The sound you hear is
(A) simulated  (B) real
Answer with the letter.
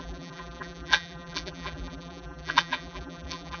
A